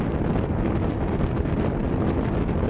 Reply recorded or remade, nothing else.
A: recorded